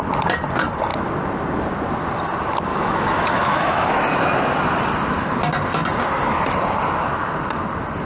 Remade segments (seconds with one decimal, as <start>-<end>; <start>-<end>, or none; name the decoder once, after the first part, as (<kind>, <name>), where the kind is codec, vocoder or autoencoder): 2.7-4.0 (autoencoder, DAC-VAE)

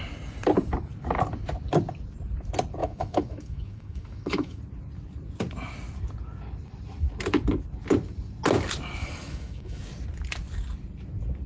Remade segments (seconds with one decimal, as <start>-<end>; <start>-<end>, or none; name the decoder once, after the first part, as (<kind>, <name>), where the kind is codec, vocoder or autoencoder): 2.8-4.6 (autoencoder, DAC-VAE); 9.0-9.8

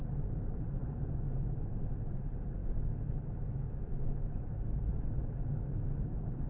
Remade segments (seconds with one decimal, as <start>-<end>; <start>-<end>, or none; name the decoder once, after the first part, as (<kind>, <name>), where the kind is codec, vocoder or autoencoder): 0.8-1.5 (autoencoder, DAC-VAE); 2.6-6.5

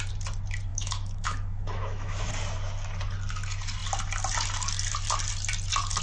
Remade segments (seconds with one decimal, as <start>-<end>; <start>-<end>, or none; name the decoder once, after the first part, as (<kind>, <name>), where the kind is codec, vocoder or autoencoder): 0.7-2.3 (autoencoder, DAC-VAE)

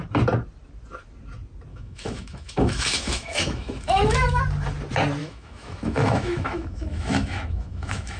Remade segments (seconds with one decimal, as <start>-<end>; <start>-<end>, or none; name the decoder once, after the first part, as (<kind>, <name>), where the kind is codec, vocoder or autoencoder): 1.7-4.4 (autoencoder, DAC-VAE); 5.2-8.2